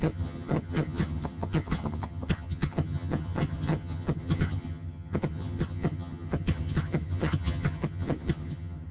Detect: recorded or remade remade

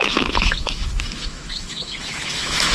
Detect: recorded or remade remade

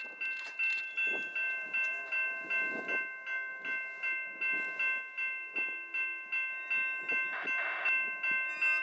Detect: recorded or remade recorded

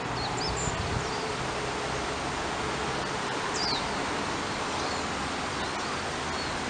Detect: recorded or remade recorded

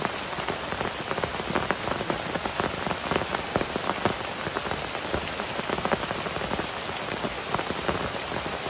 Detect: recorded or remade recorded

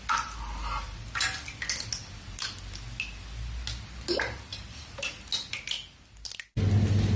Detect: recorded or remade recorded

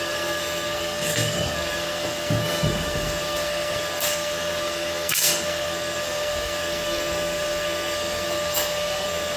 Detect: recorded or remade remade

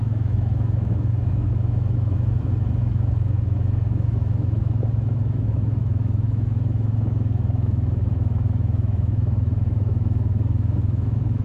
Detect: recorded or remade remade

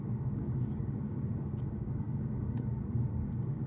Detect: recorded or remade remade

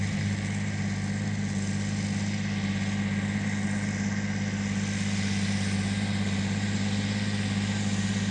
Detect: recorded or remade recorded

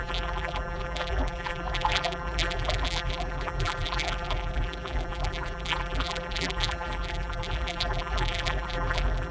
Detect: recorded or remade remade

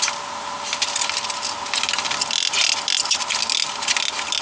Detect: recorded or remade recorded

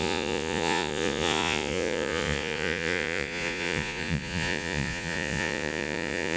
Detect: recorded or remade remade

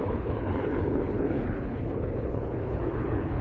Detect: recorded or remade remade